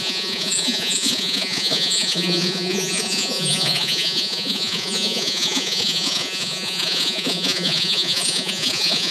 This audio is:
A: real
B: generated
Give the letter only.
B